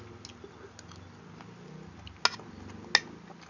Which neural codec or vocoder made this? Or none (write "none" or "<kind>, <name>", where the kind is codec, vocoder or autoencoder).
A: none